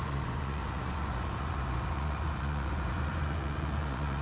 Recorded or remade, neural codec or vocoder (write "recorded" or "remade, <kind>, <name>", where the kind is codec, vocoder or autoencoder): remade, vocoder, Vocos